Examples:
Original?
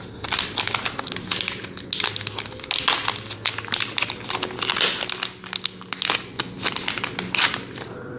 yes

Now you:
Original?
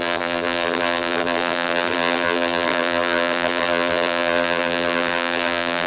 no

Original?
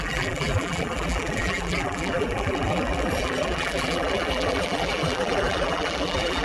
no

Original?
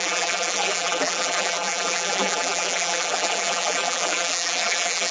no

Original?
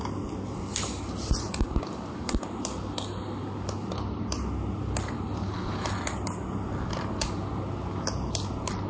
yes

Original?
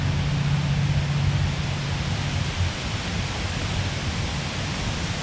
yes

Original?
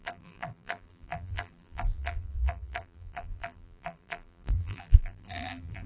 no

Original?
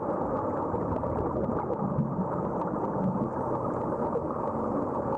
yes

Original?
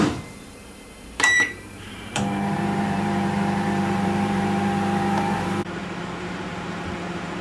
no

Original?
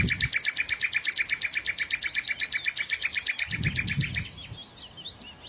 yes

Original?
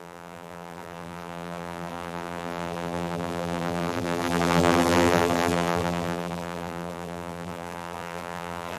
no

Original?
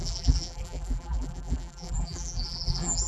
no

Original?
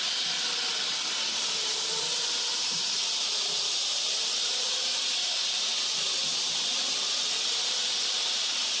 no